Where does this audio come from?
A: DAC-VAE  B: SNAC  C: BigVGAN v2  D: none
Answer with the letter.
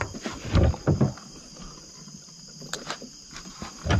D